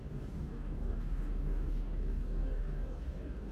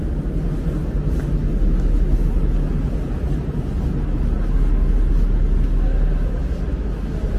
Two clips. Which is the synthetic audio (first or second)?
first